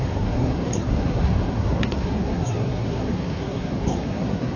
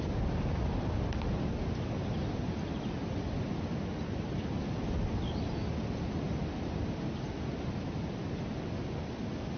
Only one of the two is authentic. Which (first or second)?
second